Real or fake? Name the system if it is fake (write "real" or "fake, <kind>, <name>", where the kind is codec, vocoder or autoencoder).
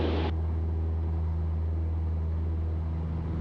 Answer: real